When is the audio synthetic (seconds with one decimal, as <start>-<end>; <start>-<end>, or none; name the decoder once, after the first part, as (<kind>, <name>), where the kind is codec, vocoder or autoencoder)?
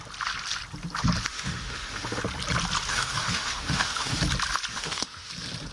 1.3-2.2 (autoencoder, DAC-VAE); 2.9-4.2; 4.7-5.3